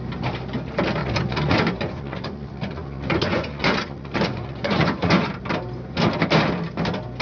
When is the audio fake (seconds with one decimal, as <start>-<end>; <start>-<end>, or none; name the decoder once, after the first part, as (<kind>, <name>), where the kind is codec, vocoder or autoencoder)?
1.0-5.3 (vocoder, Vocos)